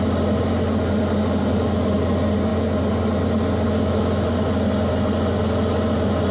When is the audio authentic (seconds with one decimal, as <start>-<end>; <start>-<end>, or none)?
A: 0.0-6.3